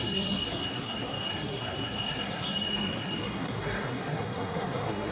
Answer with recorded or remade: remade